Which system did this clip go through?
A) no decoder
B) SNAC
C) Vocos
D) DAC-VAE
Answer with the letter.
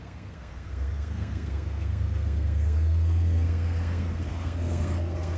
B